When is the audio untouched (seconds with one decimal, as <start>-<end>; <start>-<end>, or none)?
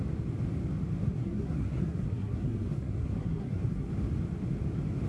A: 0.0-1.0; 3.9-5.1